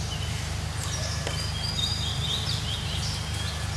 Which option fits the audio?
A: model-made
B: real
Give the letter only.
B